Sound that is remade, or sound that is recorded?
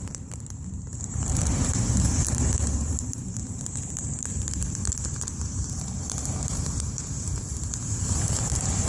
remade